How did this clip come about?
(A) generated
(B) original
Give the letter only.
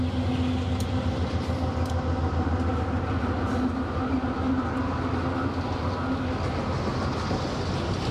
B